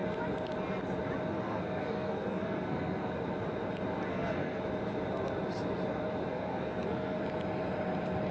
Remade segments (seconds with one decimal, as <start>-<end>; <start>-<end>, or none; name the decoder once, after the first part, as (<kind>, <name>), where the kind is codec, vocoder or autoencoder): 1.3-3.1 (codec, SNAC); 4.1-4.6; 6.3-7.2